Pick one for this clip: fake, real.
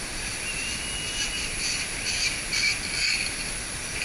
fake